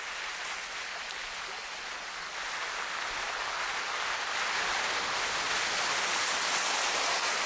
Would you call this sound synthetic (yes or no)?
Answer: no